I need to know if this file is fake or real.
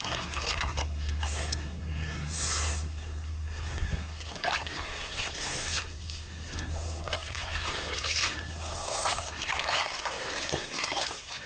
fake